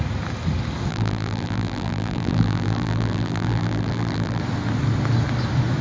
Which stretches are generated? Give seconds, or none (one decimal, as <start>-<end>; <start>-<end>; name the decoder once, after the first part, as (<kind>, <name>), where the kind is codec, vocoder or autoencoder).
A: 0.9-4.4 (vocoder, BigVGAN v2)